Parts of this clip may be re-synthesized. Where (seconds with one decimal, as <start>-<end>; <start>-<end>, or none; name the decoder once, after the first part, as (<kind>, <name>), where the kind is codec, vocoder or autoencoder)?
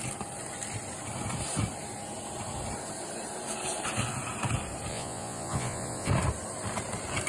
4.9-6.1 (vocoder, Vocos)